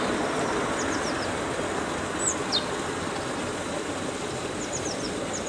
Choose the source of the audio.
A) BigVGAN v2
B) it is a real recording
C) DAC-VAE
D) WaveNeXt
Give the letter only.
B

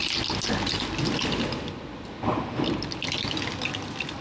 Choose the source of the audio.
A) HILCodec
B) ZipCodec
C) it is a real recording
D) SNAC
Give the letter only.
C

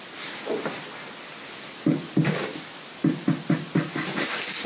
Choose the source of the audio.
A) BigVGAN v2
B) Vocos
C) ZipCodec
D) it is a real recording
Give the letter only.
D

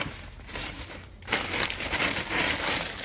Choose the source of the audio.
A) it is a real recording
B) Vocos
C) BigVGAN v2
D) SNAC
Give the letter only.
A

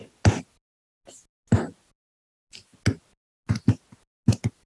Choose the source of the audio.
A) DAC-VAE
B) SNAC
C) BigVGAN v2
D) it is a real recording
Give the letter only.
D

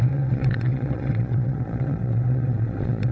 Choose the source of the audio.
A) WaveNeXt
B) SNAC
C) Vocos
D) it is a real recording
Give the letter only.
A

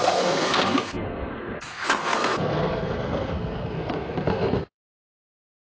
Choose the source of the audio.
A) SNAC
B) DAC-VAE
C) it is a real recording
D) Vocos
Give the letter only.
A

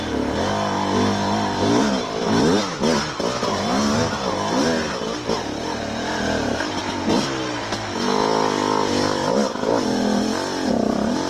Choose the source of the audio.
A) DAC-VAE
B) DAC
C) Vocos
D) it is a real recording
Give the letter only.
D